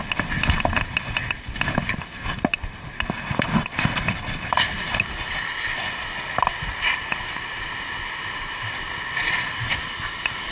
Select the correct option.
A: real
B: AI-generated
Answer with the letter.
A